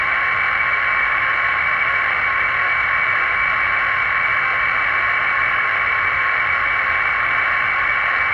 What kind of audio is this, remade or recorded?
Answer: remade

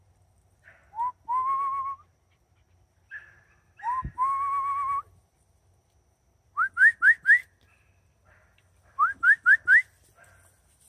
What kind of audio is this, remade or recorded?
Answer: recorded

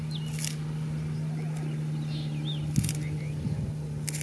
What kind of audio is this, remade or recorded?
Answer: recorded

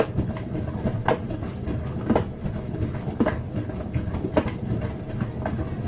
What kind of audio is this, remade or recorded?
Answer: recorded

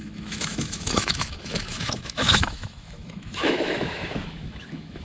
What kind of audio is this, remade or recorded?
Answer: remade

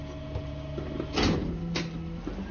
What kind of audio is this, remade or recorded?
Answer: recorded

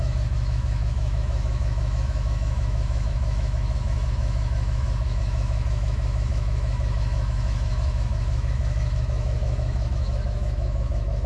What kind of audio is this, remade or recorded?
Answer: remade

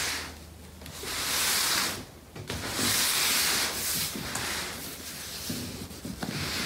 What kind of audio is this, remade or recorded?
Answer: recorded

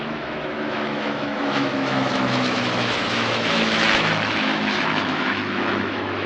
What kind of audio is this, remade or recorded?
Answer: remade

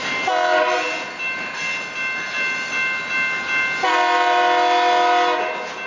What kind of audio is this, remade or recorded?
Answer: recorded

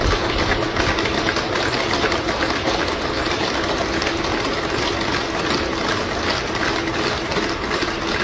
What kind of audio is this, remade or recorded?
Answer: recorded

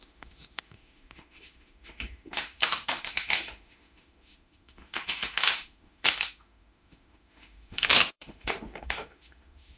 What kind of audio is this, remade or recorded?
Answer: remade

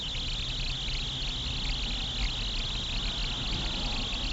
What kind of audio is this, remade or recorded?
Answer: recorded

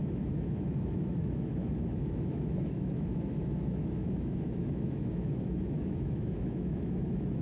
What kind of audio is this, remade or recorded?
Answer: remade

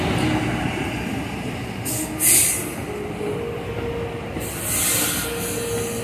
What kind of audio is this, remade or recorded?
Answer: recorded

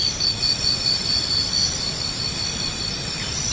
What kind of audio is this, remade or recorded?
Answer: recorded